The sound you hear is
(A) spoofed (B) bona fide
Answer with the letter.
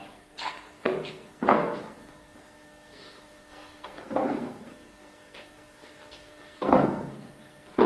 A